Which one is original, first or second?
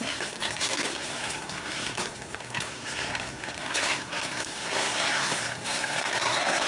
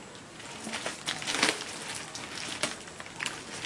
second